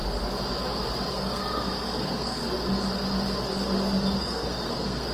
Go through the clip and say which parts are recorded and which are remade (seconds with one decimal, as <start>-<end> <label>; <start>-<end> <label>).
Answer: 0.0-1.1 recorded; 1.1-2.4 remade; 2.4-4.2 recorded; 4.2-5.1 remade